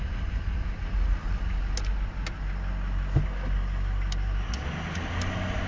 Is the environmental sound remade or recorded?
recorded